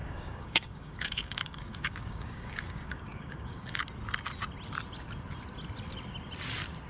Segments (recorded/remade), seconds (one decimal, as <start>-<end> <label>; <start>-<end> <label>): 0.0-3.8 remade; 3.8-6.9 recorded